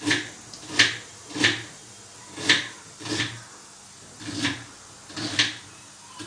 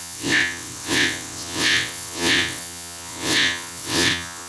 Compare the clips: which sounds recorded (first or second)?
first